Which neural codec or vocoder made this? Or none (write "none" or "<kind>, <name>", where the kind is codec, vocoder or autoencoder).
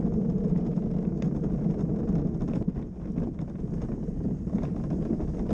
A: none